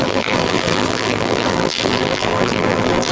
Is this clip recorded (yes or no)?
no